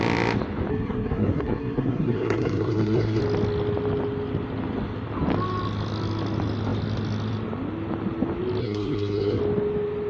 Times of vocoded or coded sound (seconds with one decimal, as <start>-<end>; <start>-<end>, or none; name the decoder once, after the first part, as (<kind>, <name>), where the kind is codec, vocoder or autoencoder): 0.7-3.2 (codec, SNAC); 8.6-9.4